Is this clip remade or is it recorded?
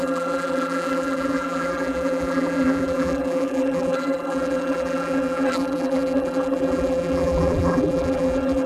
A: remade